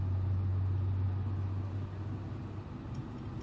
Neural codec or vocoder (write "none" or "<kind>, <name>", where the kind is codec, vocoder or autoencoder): none